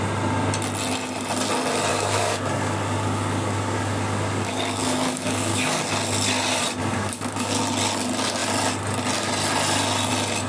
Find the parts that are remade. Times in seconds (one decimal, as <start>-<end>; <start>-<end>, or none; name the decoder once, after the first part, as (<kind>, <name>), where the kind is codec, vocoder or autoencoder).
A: 1.9-5.8 (codec, DAC); 6.8-7.6